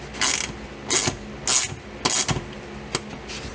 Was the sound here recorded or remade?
recorded